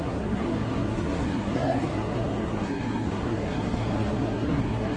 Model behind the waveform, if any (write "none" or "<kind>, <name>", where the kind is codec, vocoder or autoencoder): codec, SNAC